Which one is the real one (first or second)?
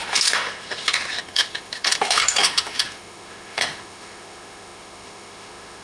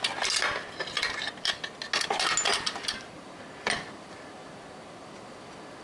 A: second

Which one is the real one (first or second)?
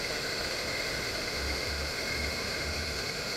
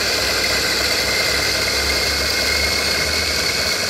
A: second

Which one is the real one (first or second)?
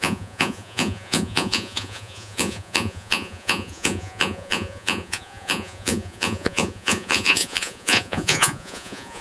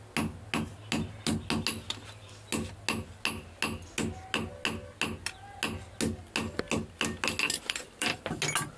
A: second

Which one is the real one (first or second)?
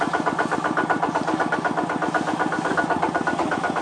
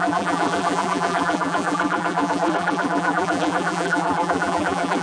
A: first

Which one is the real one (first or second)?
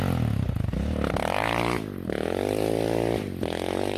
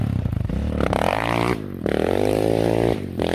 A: first